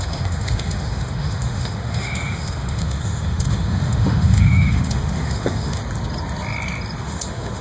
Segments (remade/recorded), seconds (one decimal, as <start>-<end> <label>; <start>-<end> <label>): 0.0-5.8 remade; 5.8-7.0 recorded; 7.0-7.6 remade